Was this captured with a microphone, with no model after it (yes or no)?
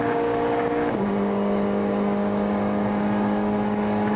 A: no